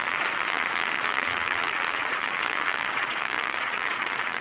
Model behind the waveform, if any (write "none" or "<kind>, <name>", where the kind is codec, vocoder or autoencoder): vocoder, Vocos